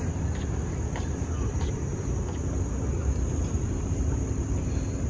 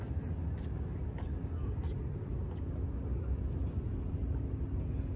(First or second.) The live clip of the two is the second